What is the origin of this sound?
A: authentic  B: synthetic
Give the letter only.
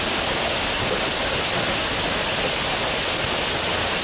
A